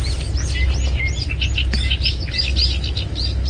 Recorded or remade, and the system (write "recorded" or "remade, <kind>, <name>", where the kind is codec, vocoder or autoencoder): recorded